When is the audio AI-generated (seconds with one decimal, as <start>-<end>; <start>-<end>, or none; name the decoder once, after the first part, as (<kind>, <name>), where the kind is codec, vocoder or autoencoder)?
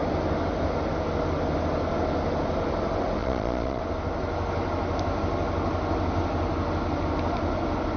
3.2-3.8 (vocoder, Vocos)